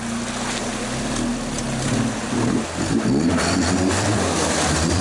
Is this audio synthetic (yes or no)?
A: no